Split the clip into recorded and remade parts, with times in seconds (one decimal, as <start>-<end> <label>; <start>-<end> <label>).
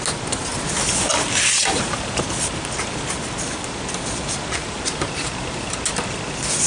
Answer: 0.0-1.6 recorded; 1.6-2.2 remade; 2.2-4.6 recorded; 4.6-5.4 remade; 5.4-6.7 recorded